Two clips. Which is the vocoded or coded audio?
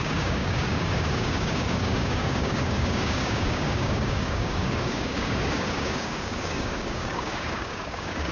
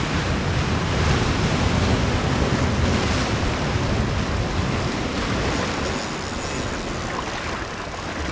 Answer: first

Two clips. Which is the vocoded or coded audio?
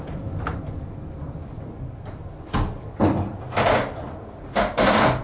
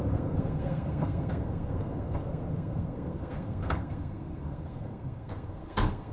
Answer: second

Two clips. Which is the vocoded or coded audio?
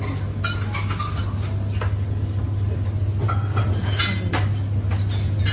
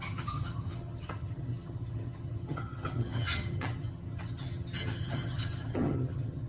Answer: second